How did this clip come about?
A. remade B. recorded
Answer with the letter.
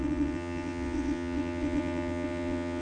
A